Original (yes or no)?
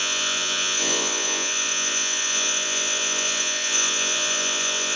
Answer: no